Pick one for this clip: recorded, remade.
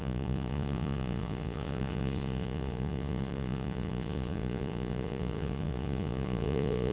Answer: remade